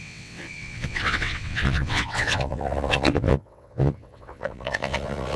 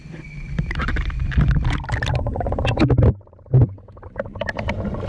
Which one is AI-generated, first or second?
first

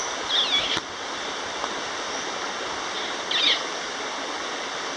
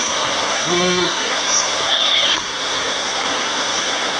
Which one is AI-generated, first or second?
second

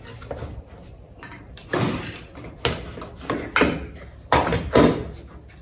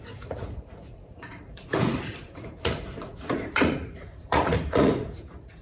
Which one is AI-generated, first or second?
second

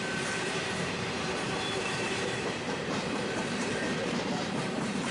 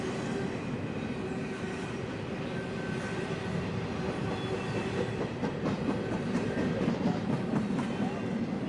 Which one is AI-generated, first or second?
first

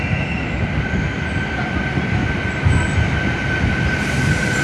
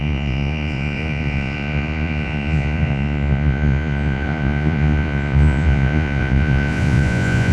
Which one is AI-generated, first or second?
second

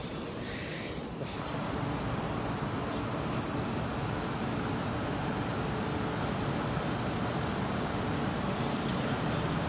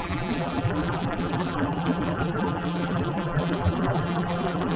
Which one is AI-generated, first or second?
second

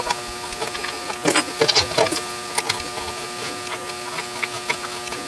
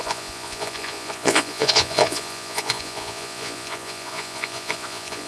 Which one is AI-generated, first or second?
second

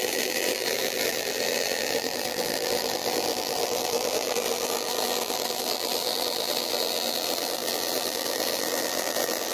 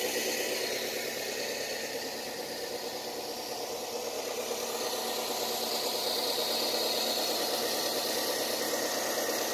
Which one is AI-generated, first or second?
first